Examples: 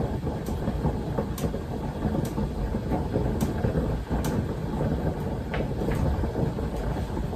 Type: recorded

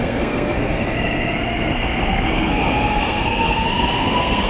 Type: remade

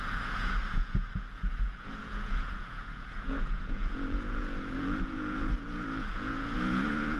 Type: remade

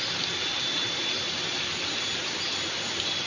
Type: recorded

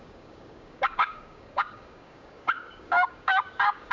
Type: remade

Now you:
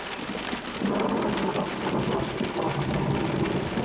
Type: recorded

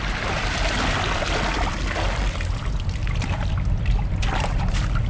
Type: recorded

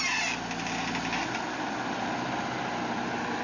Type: recorded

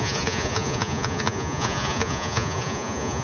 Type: remade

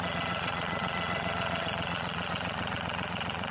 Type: remade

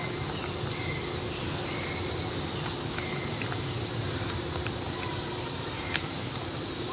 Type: recorded